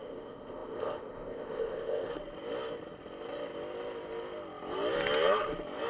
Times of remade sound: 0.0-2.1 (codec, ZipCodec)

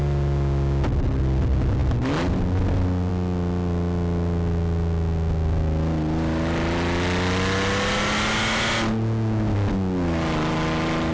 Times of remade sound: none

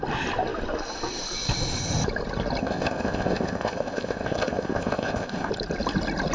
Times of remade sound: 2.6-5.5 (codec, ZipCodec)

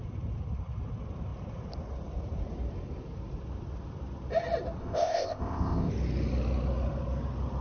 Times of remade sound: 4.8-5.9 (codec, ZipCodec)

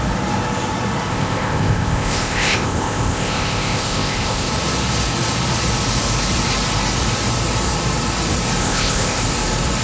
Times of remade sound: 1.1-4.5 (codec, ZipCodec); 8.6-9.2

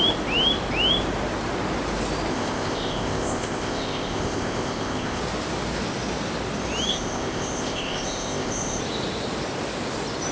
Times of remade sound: 2.3-5.2 (codec, ZipCodec); 6.9-8.8

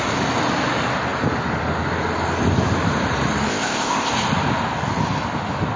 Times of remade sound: 3.5-4.1 (codec, ZipCodec)

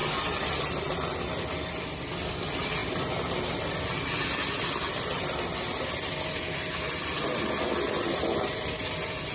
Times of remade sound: none